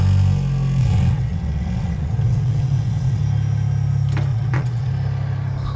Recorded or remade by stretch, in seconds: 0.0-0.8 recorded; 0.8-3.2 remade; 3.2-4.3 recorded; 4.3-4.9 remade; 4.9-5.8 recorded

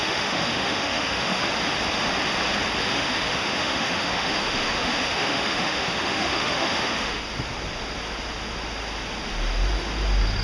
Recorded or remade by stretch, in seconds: 0.0-1.5 remade; 1.5-2.8 recorded; 2.8-7.2 remade; 7.2-10.4 recorded